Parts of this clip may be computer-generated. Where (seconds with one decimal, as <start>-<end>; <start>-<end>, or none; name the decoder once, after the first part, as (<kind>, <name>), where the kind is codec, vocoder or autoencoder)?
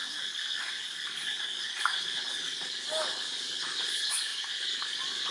0.0-5.3 (codec, DAC)